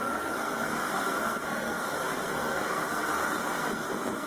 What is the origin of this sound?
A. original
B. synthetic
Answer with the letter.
B